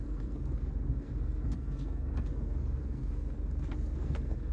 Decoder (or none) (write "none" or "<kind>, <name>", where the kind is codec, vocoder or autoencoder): codec, SNAC